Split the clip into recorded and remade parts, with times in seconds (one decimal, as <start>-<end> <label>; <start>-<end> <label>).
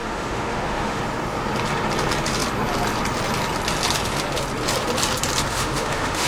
0.0-1.0 remade; 1.0-5.5 recorded; 5.5-6.3 remade